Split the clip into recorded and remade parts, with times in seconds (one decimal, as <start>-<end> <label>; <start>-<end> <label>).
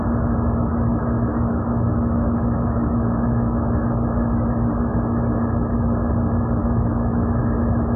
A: 0.0-1.5 recorded; 1.5-3.8 remade; 3.8-6.6 recorded; 6.6-7.4 remade; 7.4-8.0 recorded